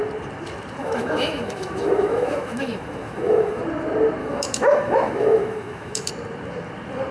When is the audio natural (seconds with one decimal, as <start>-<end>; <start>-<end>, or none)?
0.0-0.8; 3.6-4.2; 6.1-7.1